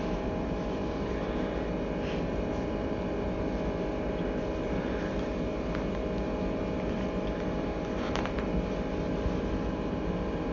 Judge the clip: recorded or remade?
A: remade